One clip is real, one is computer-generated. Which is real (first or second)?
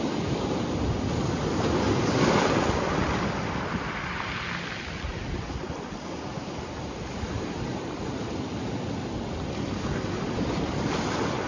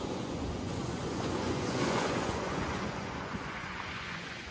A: first